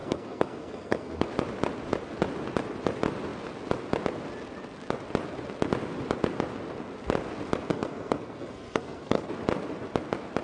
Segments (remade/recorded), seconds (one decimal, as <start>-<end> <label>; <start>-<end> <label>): 0.0-1.3 remade; 1.3-7.7 recorded; 7.7-9.3 remade; 9.3-10.4 recorded